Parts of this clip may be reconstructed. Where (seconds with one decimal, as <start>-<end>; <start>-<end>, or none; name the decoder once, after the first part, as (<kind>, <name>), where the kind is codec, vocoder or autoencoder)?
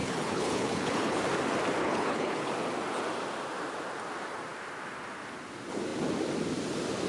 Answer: 0.0-1.2 (codec, HILCodec); 1.8-2.5